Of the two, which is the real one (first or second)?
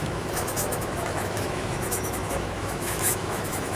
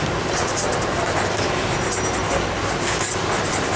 second